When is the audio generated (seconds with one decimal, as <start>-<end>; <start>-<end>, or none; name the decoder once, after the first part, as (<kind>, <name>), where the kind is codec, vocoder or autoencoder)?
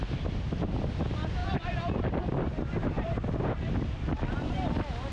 none